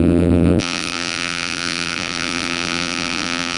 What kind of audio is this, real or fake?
fake